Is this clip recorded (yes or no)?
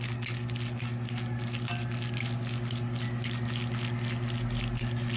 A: yes